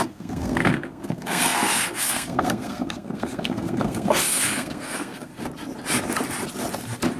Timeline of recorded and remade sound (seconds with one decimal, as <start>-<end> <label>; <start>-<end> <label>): 0.0-5.3 remade; 5.3-7.2 recorded

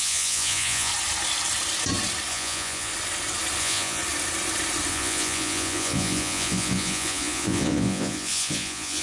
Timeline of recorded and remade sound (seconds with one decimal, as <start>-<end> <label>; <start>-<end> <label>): 0.0-0.9 remade; 0.9-2.3 recorded; 2.3-2.9 remade; 2.9-3.6 recorded; 3.6-4.0 remade; 4.0-4.9 recorded; 4.9-9.0 remade

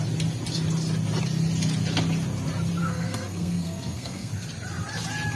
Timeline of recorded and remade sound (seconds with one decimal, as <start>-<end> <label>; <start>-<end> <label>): 0.0-2.8 recorded; 2.8-4.3 remade; 4.3-5.4 recorded

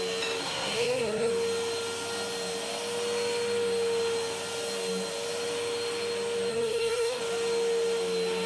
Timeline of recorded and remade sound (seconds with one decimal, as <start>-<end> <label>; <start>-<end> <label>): 0.0-0.4 recorded; 0.4-1.3 remade; 1.3-6.5 recorded; 6.5-7.2 remade; 7.2-8.5 recorded

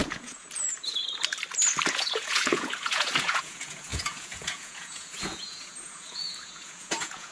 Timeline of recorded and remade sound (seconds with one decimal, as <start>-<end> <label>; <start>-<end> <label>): 0.0-1.0 remade; 1.0-1.9 recorded; 1.9-7.3 remade

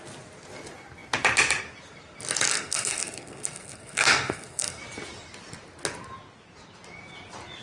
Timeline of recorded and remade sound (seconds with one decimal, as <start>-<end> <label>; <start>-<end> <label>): 0.0-2.5 recorded; 2.5-4.8 remade; 4.8-7.6 recorded

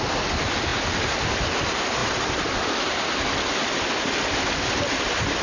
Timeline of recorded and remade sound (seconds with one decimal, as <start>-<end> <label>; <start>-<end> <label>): 0.0-5.4 recorded